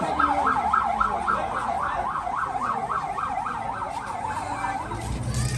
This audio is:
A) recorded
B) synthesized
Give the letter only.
A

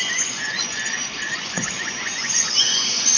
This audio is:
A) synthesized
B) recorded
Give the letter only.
A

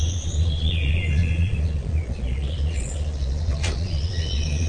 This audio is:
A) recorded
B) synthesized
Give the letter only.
B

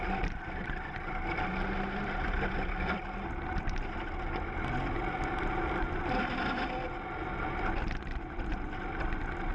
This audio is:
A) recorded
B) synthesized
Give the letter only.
A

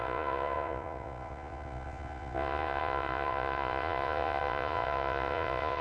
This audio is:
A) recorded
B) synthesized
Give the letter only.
B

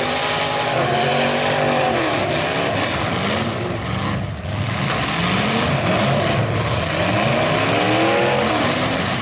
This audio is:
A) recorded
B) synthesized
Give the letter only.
A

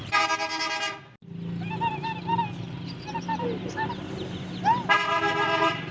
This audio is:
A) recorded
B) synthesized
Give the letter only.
A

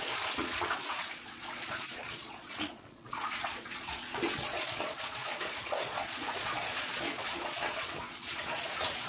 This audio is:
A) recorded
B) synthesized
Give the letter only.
B